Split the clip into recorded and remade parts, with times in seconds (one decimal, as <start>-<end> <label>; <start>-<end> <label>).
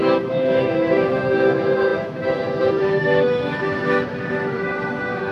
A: 0.0-5.3 remade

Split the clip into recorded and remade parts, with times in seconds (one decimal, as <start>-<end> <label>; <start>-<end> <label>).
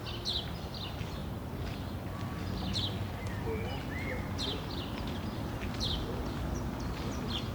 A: 0.0-1.2 recorded; 1.2-1.9 remade; 1.9-4.7 recorded; 4.7-7.5 remade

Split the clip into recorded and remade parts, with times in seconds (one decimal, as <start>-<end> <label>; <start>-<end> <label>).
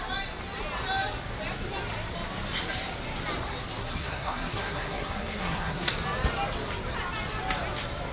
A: 0.0-3.8 recorded; 3.8-5.9 remade; 5.9-8.1 recorded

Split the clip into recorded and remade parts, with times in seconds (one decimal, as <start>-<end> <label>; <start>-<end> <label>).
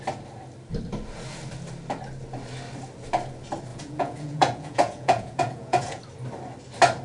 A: 0.0-3.7 recorded; 3.7-6.0 remade; 6.0-7.0 recorded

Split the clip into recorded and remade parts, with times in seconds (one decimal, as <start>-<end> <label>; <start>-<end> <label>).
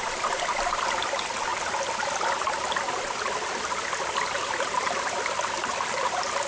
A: 0.0-6.5 recorded